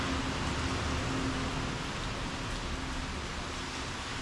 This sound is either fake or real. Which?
real